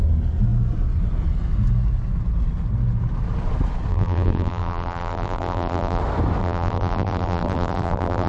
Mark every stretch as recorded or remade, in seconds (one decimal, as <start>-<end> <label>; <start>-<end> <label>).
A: 0.0-3.9 recorded; 3.9-6.0 remade; 6.0-6.4 recorded; 6.4-8.3 remade